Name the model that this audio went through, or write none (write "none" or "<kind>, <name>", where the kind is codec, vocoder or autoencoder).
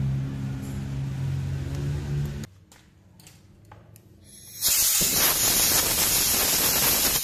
none